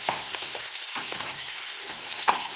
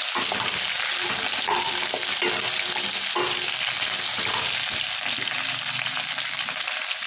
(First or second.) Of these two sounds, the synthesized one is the first